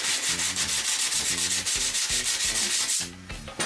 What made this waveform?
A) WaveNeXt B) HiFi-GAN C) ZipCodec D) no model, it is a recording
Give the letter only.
D